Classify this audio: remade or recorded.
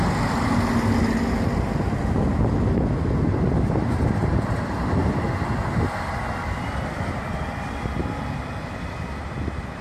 recorded